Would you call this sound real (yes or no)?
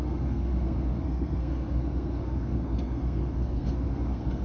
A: no